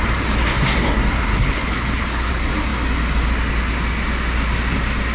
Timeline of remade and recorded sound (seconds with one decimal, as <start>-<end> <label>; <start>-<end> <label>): 0.0-1.3 recorded; 1.3-2.3 remade; 2.3-5.1 recorded